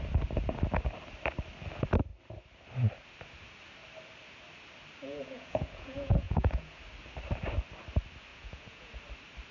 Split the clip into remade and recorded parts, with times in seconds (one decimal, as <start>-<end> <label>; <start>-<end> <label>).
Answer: 0.0-5.0 recorded; 5.0-6.8 remade; 6.8-8.3 recorded; 8.3-8.9 remade; 8.9-9.5 recorded